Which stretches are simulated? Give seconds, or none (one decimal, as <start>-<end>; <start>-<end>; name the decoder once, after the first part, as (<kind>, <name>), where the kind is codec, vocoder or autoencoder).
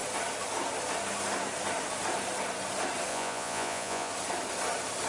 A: 3.1-4.1 (vocoder, Vocos)